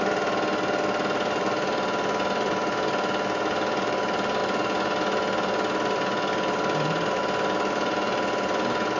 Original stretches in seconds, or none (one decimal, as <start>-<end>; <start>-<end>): 0.0-9.0